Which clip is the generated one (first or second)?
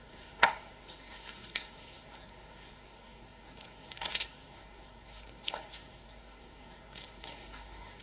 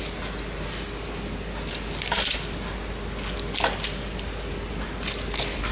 first